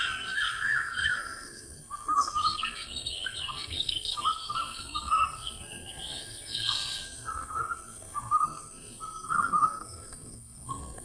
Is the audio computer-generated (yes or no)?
yes